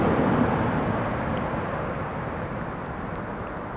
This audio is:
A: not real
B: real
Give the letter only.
B